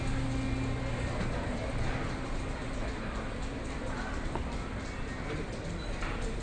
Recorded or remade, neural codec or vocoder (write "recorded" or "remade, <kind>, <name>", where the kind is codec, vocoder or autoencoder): recorded